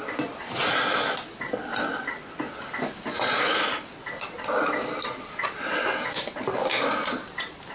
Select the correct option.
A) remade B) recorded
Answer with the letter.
B